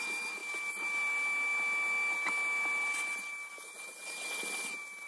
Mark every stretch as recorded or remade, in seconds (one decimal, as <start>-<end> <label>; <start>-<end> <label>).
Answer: 0.0-5.1 recorded